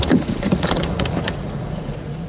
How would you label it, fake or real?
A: fake